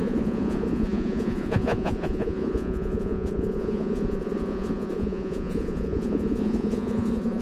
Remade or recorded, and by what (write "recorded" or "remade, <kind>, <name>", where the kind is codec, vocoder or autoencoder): remade, vocoder, Vocos